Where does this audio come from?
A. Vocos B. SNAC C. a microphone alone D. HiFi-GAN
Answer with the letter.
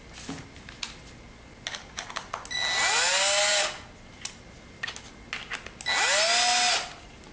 C